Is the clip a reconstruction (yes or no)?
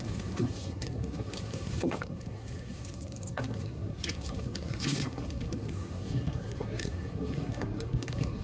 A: yes